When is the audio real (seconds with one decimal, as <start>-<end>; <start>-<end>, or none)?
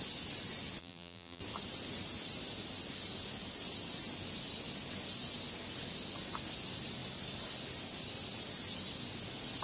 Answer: 0.0-0.8; 1.4-9.6